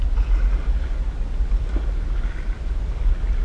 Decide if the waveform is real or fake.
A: real